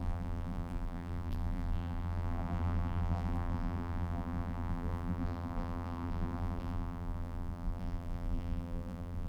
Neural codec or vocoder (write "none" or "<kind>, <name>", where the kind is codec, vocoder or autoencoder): vocoder, BigVGAN v2